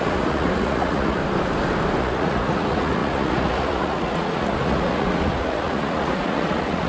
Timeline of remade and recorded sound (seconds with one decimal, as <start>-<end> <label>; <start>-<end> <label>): 0.0-1.2 remade; 1.2-2.0 recorded; 2.0-6.9 remade